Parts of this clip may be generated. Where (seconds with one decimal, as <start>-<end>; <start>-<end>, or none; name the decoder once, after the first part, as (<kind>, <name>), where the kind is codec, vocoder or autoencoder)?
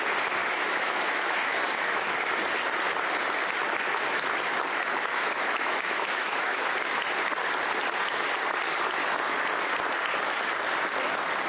0.4-2.3 (autoencoder, DAC-VAE); 5.1-6.7